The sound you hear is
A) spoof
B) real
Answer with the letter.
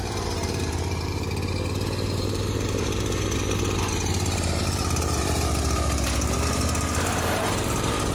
A